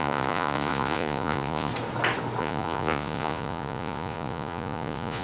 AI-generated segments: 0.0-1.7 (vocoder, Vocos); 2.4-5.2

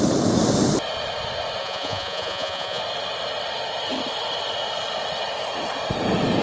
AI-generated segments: 1.6-2.8 (vocoder, Vocos)

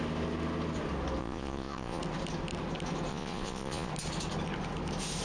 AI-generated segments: 1.2-2.0 (vocoder, Vocos); 3.1-3.9

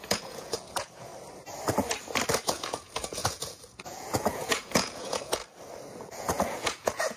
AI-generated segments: 0.0-1.1 (vocoder, Vocos); 2.4-5.4; 5.9-7.2

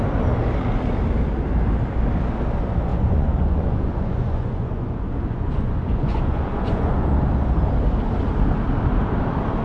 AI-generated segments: 2.9-7.0 (vocoder, Vocos)

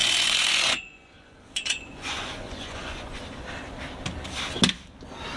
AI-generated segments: 0.0-3.2 (vocoder, Vocos)

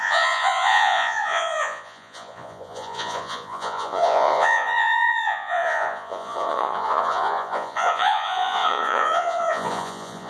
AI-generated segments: 0.0-10.3 (vocoder, Vocos)

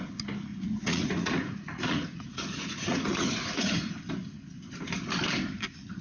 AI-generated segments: 0.5-4.0 (vocoder, Vocos)